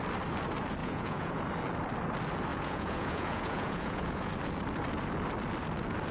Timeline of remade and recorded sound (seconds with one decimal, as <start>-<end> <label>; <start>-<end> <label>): 0.0-0.8 recorded; 0.8-1.4 remade; 1.4-2.5 recorded; 2.5-4.3 remade; 4.3-6.1 recorded